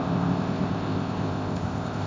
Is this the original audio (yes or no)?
no